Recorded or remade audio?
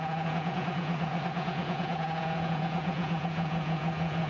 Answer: remade